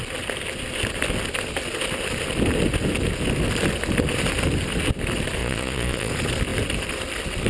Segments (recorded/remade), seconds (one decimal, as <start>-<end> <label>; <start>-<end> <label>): 0.0-5.4 recorded; 5.4-6.1 remade; 6.1-7.5 recorded